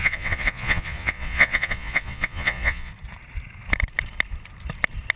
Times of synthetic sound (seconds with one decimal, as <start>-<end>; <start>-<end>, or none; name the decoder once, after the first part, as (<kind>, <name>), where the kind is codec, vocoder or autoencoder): 0.0-2.9 (vocoder, Vocos)